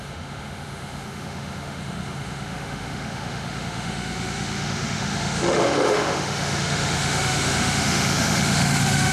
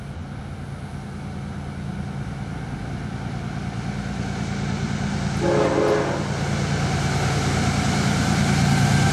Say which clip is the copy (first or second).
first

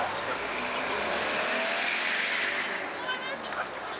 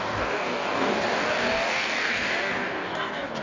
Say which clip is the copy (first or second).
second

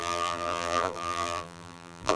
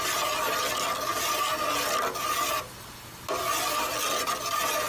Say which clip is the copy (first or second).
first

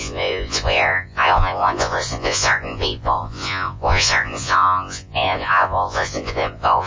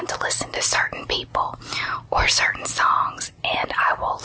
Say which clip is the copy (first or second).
first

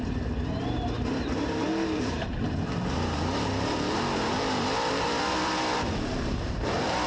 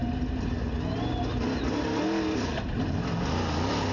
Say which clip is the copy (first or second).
first